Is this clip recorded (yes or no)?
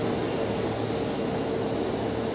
yes